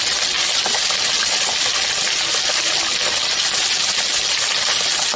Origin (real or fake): real